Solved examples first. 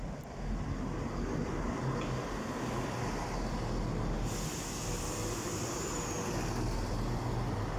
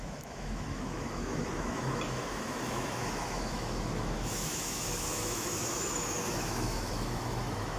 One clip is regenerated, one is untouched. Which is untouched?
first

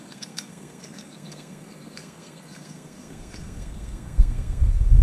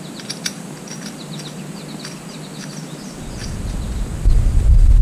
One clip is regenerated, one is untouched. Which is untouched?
second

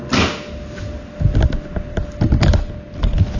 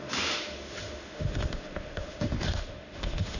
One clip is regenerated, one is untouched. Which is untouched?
first